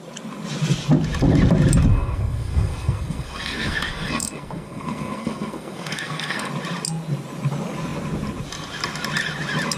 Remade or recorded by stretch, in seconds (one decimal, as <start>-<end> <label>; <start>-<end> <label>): 0.0-1.9 recorded; 1.9-6.5 remade; 6.5-9.8 recorded